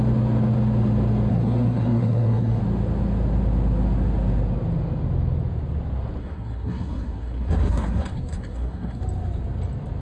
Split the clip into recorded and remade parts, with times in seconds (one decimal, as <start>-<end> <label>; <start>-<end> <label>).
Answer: 0.0-1.3 recorded; 1.3-2.6 remade; 2.6-6.2 recorded; 6.2-9.0 remade; 9.0-10.0 recorded